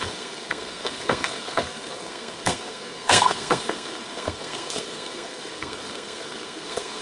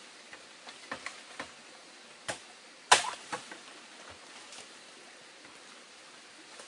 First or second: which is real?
second